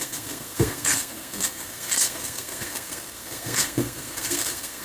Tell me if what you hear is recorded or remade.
remade